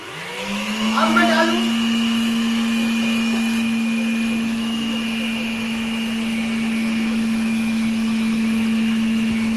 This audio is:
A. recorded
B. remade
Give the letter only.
B